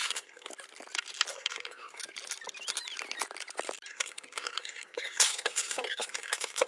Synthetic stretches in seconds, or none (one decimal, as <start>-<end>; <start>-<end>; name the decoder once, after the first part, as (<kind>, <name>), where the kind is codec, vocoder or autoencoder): 0.0-0.5 (codec, SNAC); 1.3-2.0; 3.9-6.7